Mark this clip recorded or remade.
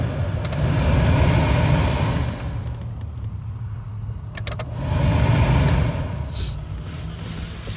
recorded